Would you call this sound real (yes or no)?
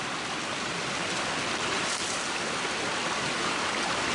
yes